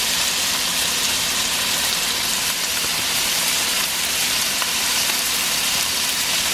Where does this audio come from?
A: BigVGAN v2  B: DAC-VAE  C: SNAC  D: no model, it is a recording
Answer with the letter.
A